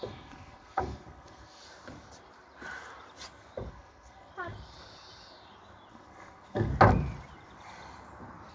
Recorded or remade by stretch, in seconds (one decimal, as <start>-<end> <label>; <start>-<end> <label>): 0.0-1.6 remade; 1.6-3.7 recorded; 3.7-4.3 remade; 4.3-5.9 recorded; 5.9-6.7 remade; 6.7-8.5 recorded